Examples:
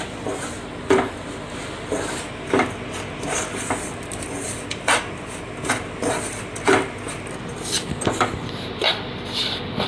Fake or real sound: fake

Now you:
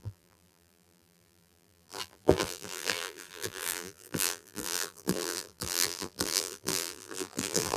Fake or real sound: fake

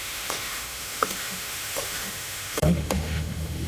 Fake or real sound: fake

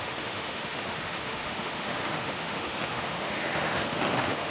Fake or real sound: fake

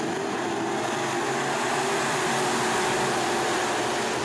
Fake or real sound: real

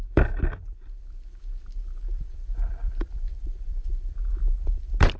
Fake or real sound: fake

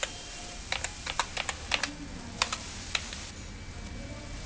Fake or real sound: real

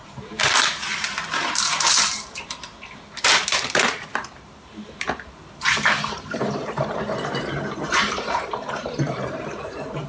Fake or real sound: fake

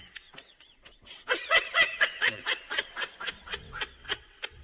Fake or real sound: fake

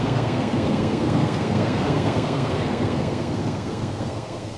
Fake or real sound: fake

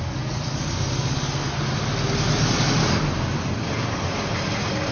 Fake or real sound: real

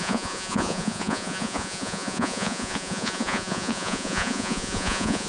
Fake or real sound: fake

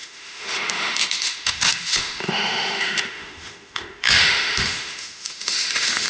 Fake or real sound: fake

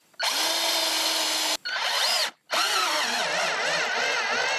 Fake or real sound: real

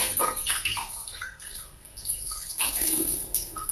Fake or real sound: fake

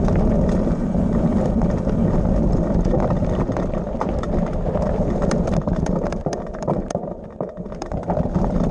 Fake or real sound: fake